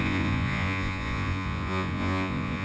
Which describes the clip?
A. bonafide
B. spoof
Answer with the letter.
B